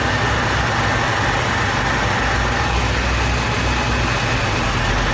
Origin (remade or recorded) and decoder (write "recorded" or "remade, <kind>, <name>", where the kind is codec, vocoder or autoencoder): recorded